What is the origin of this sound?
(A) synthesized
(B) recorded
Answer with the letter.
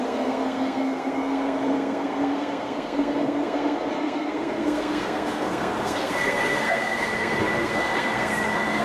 A